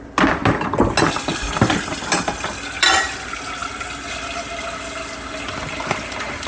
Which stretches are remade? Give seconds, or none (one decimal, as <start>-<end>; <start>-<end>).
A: none